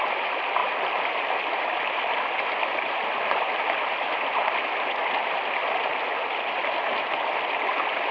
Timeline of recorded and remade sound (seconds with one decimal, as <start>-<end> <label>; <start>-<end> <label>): 0.0-8.1 recorded